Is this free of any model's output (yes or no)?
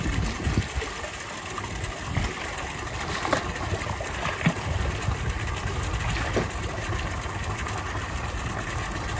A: yes